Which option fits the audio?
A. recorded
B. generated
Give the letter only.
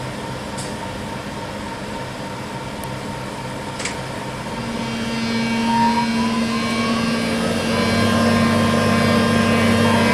A